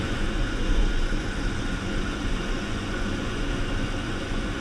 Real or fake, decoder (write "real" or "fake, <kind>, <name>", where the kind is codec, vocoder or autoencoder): fake, vocoder, Vocos